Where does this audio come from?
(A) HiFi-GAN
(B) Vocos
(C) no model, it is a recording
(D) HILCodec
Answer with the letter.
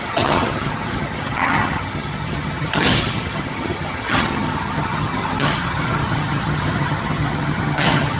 A